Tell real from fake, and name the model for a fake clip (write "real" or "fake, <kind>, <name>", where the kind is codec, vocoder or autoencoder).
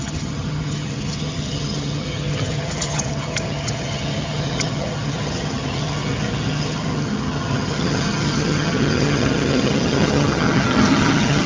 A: fake, vocoder, HiFi-GAN